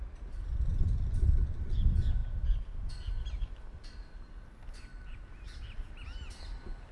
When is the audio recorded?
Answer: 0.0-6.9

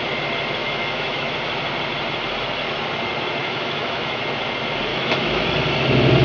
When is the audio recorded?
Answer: 0.0-0.6; 1.3-3.4; 4.2-4.9; 5.5-6.2

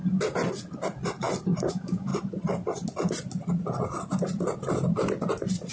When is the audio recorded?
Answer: 0.0-1.7; 2.1-5.7

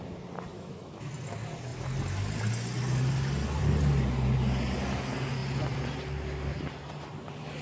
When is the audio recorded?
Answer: 0.0-0.5; 1.1-7.6

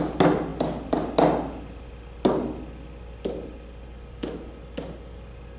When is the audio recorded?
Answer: 0.0-5.6